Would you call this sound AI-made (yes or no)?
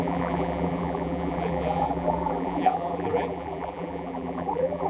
yes